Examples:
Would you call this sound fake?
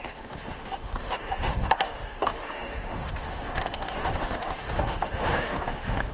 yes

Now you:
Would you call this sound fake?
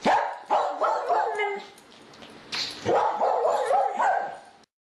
no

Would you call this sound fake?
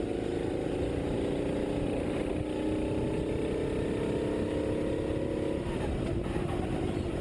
no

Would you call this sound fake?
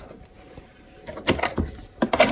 no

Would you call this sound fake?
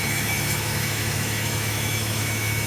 yes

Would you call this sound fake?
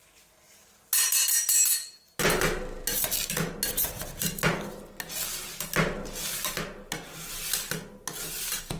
no